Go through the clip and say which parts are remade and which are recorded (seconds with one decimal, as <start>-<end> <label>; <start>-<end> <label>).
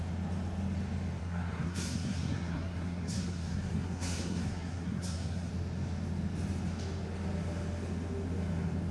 0.0-1.2 recorded; 1.2-5.5 remade; 5.5-8.9 recorded